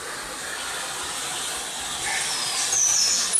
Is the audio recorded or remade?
recorded